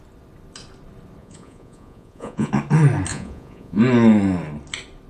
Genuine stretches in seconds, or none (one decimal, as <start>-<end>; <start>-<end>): 0.0-1.2; 2.5-3.1; 3.8-5.1